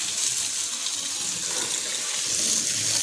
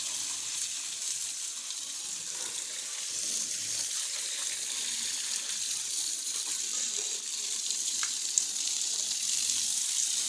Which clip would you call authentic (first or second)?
first